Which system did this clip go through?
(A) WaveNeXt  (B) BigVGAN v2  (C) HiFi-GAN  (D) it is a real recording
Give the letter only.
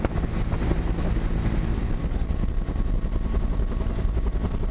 D